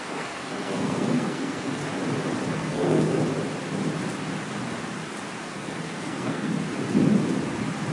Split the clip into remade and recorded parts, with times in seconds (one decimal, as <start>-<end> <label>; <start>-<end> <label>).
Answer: 0.0-1.8 remade; 1.8-2.5 recorded; 2.5-3.2 remade; 3.2-5.4 recorded; 5.4-6.5 remade; 6.5-7.9 recorded